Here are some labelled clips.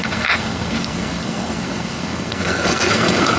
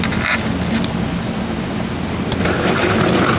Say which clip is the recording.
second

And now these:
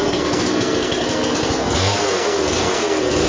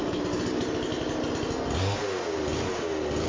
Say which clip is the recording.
second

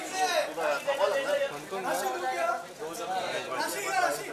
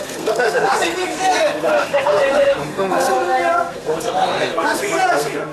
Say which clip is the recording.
first